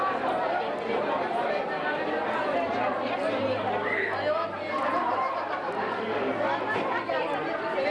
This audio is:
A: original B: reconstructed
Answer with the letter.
A